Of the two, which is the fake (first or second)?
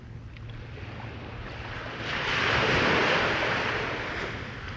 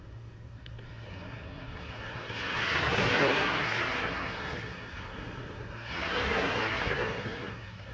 second